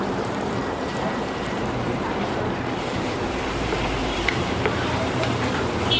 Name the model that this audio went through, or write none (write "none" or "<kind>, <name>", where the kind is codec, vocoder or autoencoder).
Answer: vocoder, BigVGAN v2